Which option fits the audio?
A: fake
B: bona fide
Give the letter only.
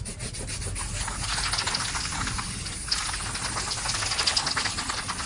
B